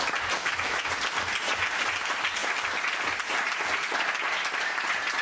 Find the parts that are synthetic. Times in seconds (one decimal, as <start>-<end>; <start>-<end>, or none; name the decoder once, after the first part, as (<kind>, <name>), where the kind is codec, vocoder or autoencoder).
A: 0.4-0.9 (autoencoder, DAC-VAE)